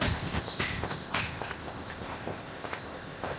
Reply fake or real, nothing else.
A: fake